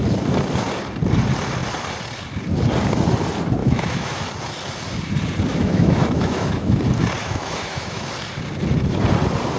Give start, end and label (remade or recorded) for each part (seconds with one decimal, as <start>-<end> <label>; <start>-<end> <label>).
0.0-3.6 recorded; 3.6-4.2 remade; 4.2-5.5 recorded; 5.5-6.8 remade; 6.8-7.2 recorded; 7.2-8.1 remade; 8.1-9.6 recorded

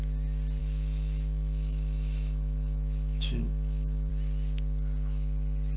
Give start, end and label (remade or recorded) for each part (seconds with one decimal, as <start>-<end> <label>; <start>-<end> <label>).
0.0-0.6 recorded; 0.6-4.1 remade; 4.1-5.8 recorded

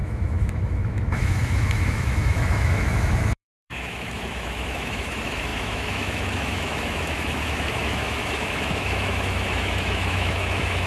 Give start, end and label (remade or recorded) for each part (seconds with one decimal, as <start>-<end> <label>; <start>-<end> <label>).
0.0-10.9 remade